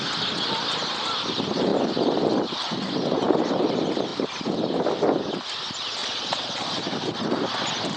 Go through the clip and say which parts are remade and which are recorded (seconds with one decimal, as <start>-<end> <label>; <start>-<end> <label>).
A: 0.0-6.0 recorded; 6.0-6.8 remade; 6.8-8.0 recorded